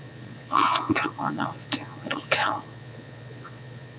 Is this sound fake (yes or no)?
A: yes